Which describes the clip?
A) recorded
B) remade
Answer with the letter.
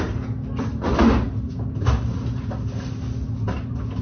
A